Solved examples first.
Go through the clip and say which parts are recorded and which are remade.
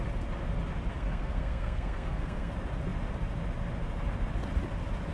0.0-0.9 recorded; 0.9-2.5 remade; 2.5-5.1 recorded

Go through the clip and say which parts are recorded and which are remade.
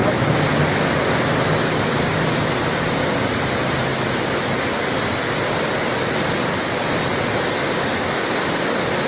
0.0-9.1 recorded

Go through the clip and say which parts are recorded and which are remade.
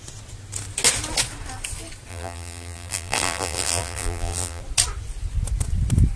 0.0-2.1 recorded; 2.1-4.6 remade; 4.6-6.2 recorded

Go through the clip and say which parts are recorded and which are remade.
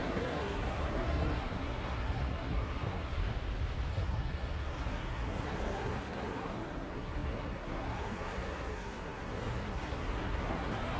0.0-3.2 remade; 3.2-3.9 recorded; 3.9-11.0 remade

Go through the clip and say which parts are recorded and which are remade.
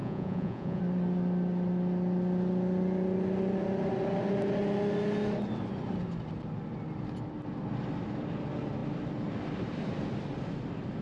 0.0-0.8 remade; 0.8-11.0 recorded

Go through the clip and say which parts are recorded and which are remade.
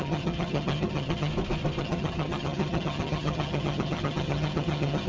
0.0-1.3 remade; 1.3-1.8 recorded; 1.8-5.1 remade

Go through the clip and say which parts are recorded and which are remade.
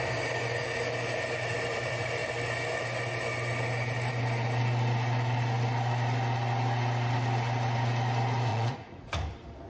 0.0-8.5 recorded; 8.5-9.1 remade; 9.1-9.7 recorded